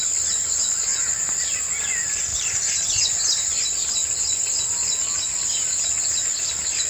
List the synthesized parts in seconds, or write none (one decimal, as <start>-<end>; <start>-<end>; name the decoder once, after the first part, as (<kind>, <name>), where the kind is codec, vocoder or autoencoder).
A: 2.3-3.6 (vocoder, BigVGAN v2)